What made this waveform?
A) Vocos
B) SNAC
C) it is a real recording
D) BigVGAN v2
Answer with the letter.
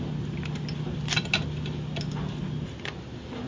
C